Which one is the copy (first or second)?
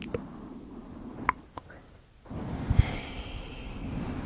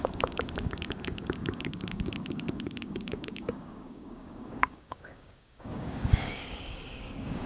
second